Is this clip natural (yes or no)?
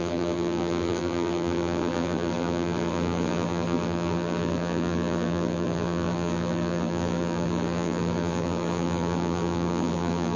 no